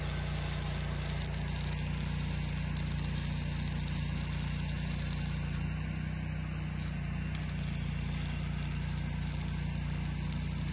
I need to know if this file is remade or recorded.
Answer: recorded